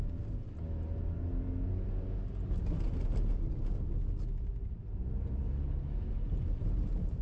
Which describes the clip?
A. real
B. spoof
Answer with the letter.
A